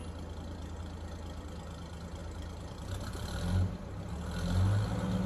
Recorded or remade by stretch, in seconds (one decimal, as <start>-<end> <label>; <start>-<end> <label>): 0.0-2.2 recorded; 2.2-4.1 remade; 4.1-5.3 recorded